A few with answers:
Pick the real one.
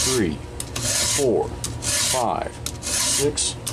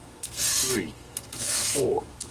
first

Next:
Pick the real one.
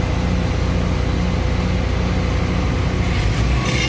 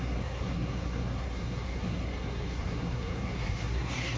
first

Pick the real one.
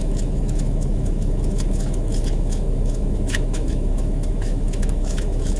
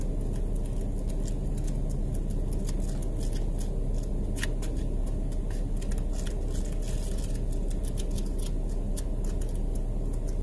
second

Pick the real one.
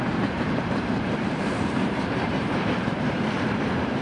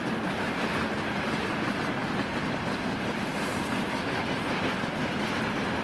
second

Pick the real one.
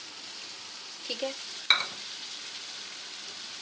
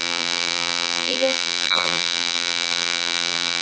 first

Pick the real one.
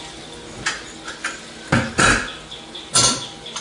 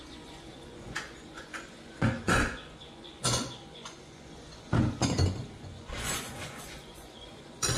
first